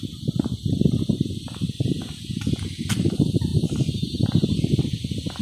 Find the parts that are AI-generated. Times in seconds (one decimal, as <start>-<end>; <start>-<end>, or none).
none